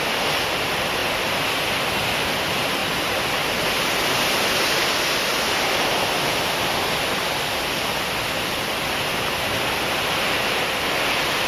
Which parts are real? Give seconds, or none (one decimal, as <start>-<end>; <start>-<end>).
0.0-11.5